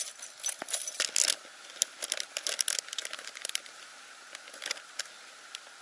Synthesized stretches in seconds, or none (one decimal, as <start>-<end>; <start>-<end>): none